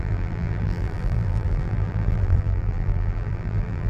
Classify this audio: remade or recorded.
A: remade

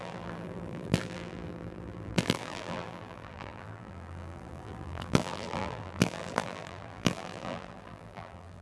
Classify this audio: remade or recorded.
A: remade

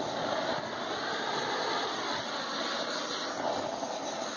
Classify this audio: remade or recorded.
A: recorded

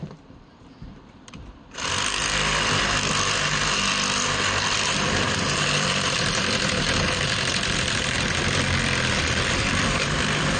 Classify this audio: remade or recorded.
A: remade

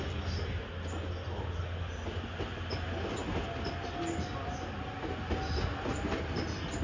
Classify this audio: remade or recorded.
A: recorded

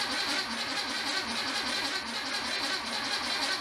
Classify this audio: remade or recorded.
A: recorded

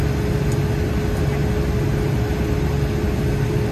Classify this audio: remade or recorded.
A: recorded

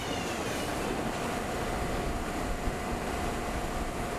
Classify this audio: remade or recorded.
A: recorded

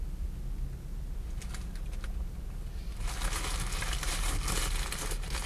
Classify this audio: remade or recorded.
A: recorded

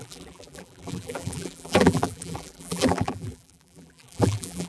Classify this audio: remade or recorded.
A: remade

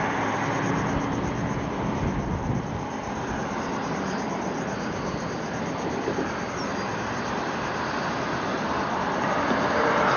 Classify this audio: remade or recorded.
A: recorded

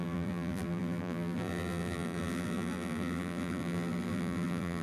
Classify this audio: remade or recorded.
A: remade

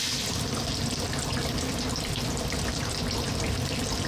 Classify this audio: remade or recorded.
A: remade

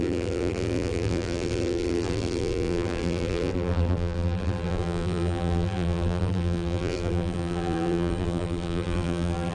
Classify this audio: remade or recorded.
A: remade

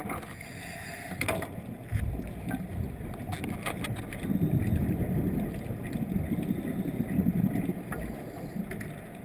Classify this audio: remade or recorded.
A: recorded